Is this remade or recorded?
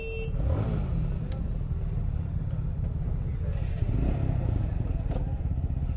recorded